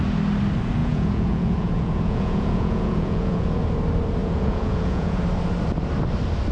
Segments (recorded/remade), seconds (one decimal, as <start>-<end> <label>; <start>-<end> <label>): 0.0-0.8 recorded; 0.8-3.6 remade; 3.6-4.2 recorded; 4.2-5.2 remade; 5.2-6.5 recorded